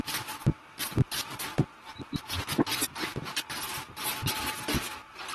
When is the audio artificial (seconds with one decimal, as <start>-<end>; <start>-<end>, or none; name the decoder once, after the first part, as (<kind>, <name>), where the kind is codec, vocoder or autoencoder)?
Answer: none